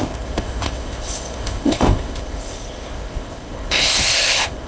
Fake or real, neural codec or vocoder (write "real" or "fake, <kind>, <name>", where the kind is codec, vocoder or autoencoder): fake, codec, ZipCodec